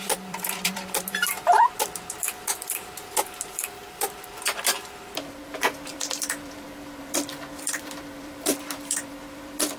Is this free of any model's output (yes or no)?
no